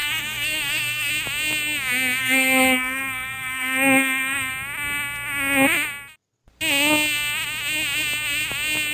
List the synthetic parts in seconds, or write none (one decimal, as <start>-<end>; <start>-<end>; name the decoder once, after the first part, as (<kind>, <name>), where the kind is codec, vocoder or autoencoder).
0.0-1.1 (codec, SNAC); 2.2-4.5